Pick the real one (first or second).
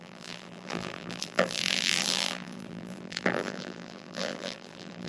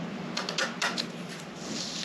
second